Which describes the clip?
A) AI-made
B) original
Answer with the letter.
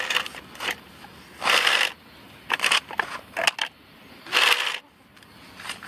B